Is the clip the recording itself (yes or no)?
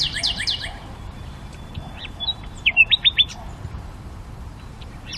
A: no